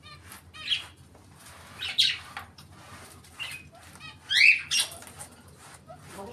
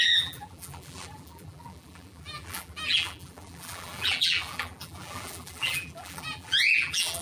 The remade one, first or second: second